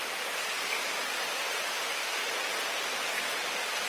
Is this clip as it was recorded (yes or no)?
no